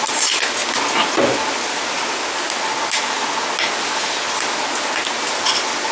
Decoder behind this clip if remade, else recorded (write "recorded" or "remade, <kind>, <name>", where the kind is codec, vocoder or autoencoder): recorded